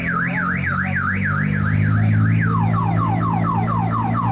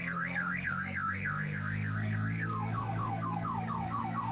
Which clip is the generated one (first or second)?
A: second